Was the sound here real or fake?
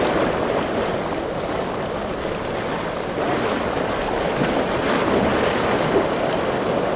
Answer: real